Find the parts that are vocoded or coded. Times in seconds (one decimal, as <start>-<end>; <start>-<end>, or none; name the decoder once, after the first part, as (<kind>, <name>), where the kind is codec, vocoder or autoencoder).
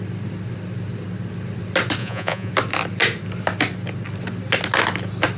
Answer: 2.0-2.5 (vocoder, Vocos)